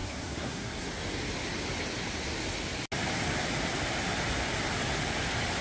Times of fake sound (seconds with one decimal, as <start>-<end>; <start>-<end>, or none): 0.0-0.9